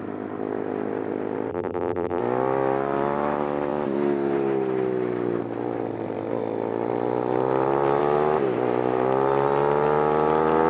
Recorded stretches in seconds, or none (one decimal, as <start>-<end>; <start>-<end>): 0.0-1.5; 2.2-10.7